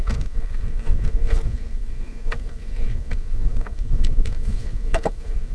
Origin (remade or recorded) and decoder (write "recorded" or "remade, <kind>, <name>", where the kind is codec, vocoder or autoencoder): remade, codec, SNAC